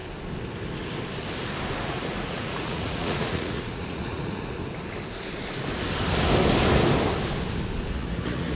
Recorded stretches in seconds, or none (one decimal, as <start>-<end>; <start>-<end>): 0.0-1.8; 4.6-7.9